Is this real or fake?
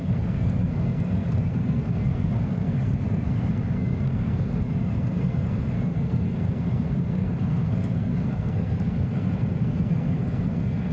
fake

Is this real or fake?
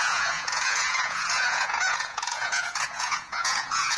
fake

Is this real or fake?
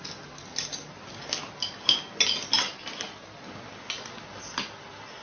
real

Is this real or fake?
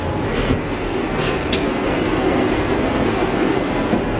fake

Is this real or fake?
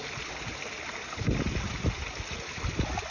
real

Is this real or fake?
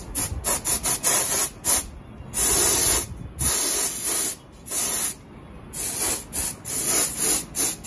real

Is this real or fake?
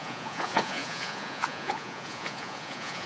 fake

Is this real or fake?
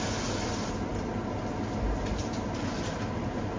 real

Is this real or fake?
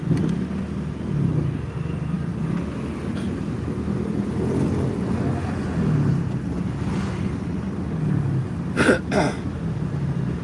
real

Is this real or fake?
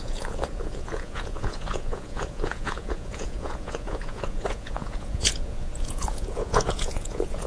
fake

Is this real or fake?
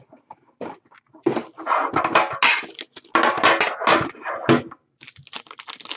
real